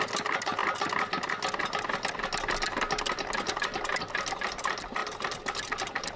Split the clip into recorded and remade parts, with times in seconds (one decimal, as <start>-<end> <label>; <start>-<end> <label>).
0.0-5.0 recorded; 5.0-6.2 remade